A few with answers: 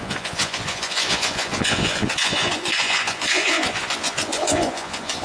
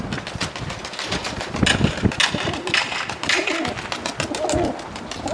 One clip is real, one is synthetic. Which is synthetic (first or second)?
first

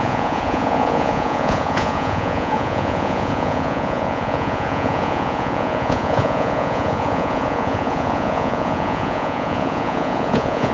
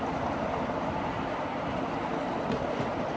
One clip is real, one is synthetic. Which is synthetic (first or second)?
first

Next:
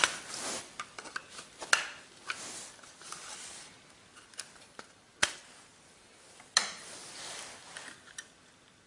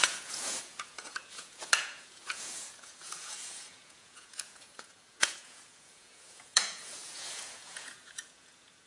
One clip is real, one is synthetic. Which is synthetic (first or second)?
second